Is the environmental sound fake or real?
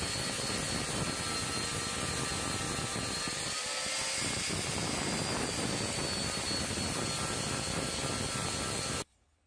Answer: real